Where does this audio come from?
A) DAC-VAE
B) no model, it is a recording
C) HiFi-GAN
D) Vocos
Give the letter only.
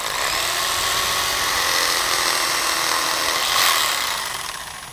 B